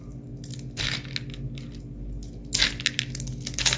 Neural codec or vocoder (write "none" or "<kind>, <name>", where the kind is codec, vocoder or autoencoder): none